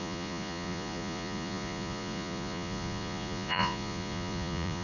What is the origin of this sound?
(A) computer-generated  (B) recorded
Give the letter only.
A